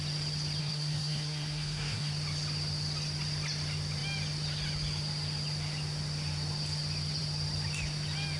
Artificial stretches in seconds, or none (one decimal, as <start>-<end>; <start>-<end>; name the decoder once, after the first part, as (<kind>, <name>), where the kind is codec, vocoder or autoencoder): 0.6-2.1 (codec, SNAC)